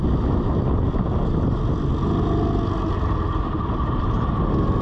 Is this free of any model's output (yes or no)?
yes